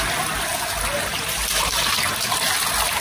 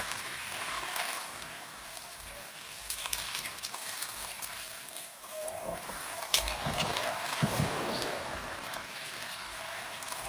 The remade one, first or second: second